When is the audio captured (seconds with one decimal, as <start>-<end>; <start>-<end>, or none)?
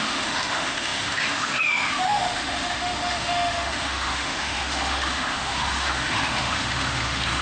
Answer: none